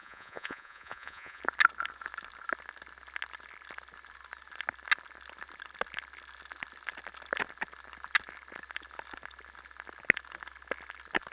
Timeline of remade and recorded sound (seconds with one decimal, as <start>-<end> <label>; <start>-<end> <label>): 0.0-1.4 remade; 1.4-11.3 recorded